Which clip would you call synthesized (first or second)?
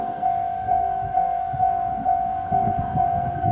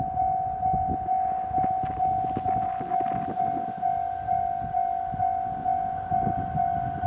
first